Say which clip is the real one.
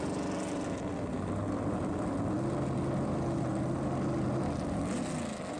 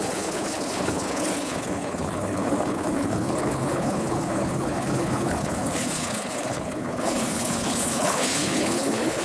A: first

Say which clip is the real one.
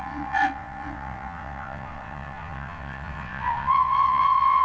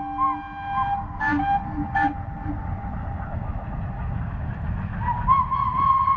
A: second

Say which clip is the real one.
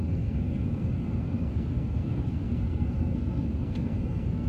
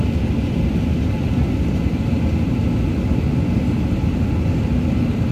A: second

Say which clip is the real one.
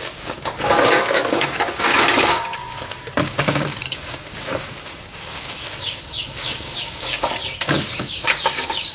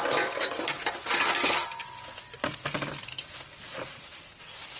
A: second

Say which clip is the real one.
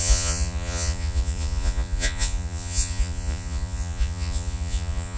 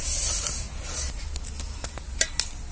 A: second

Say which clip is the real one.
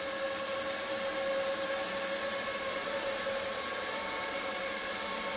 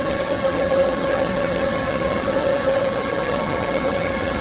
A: first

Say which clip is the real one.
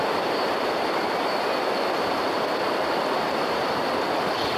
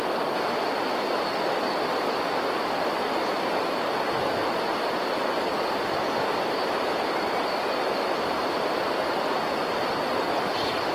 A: second